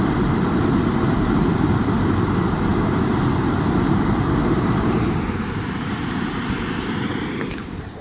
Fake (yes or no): yes